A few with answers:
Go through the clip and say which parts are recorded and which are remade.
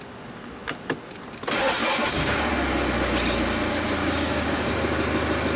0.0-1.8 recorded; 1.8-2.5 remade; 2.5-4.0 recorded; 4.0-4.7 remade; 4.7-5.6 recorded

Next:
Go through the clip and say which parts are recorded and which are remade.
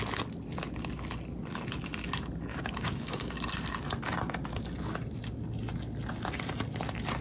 0.0-2.5 recorded; 2.5-3.3 remade; 3.3-7.2 recorded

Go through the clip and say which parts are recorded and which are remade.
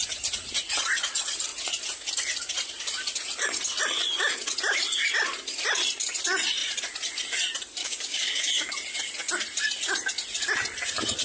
0.0-7.8 recorded; 7.8-8.7 remade; 8.7-11.2 recorded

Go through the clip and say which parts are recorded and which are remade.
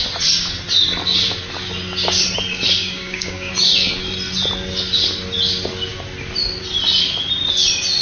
0.0-2.8 recorded; 2.8-3.5 remade; 3.5-8.0 recorded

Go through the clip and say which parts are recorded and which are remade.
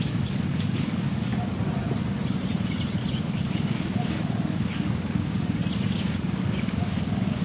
0.0-1.3 remade; 1.3-3.1 recorded; 3.1-5.6 remade; 5.6-6.1 recorded; 6.1-7.4 remade